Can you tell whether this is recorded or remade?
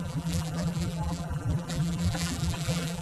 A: remade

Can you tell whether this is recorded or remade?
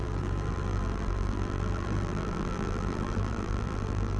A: remade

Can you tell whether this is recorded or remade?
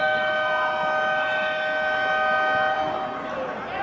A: recorded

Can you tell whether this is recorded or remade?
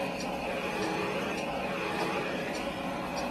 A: recorded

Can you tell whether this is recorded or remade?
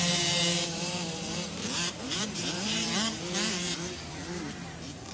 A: remade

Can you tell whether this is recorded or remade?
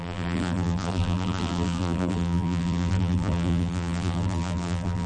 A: remade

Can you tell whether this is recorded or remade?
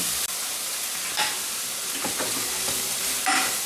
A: remade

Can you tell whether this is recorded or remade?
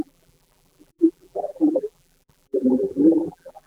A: remade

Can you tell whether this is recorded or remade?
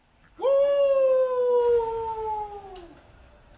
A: recorded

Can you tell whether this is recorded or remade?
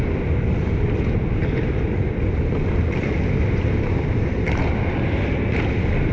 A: remade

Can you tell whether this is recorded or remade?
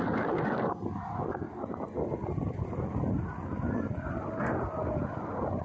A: recorded